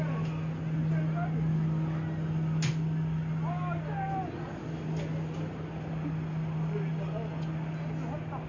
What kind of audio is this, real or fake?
real